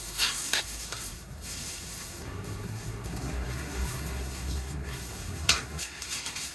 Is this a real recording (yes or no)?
no